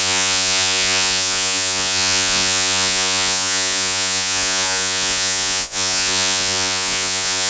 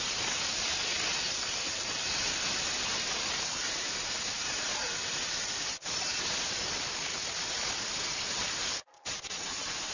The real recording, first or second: second